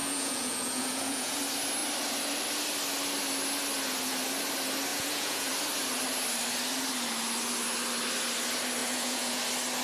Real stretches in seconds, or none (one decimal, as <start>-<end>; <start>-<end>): 1.4-4.9; 5.5-8.8; 9.4-9.8